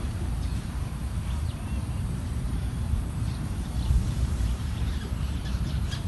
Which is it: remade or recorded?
remade